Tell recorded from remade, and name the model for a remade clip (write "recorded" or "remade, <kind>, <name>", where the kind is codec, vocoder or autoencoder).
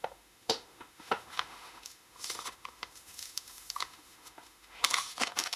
remade, autoencoder, DAC-VAE